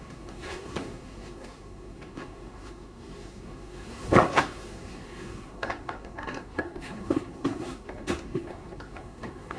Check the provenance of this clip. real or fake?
fake